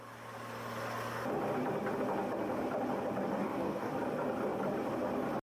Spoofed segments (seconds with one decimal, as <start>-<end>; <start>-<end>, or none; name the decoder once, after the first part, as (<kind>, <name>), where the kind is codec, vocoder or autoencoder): 3.4-3.9 (codec, DAC)